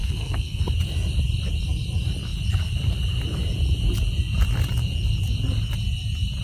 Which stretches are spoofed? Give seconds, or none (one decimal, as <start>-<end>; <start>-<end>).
0.0-0.6